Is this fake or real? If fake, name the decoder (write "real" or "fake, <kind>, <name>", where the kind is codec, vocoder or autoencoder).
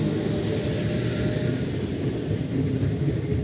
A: real